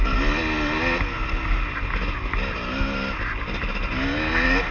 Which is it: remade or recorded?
recorded